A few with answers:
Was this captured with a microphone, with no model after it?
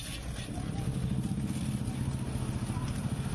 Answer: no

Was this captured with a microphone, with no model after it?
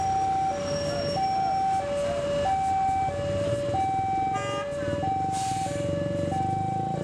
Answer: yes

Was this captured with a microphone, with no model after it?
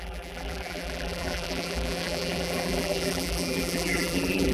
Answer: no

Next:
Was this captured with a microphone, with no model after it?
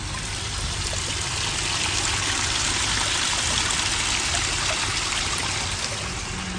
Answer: yes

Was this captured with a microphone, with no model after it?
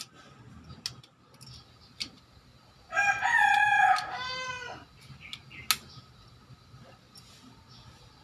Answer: yes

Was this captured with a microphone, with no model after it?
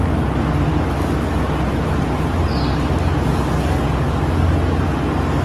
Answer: yes